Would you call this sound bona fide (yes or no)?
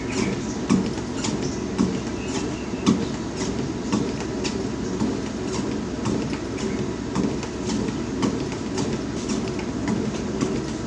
yes